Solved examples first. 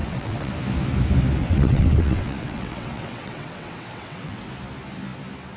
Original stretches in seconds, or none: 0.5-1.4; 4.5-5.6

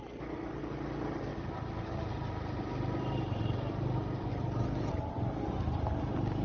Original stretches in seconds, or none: 0.0-6.4

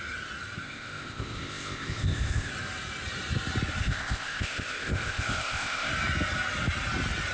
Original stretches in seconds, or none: 0.0-0.6; 2.5-3.8; 5.9-7.3

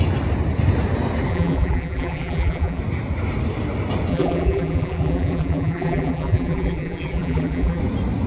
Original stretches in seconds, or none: 0.0-1.3; 2.8-4.1; 7.8-8.3

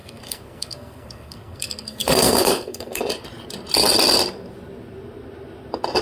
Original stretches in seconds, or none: 3.0-6.0

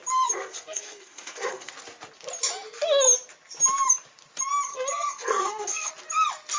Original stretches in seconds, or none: 0.0-0.4; 1.7-4.7; 5.9-6.6

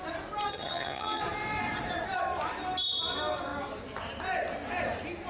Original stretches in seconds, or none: 0.0-0.5; 1.2-5.3